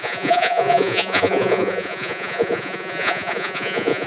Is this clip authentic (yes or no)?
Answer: no